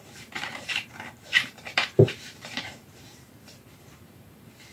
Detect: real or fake fake